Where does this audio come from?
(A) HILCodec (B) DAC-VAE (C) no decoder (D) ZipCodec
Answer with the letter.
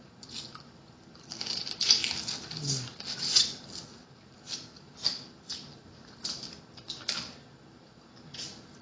C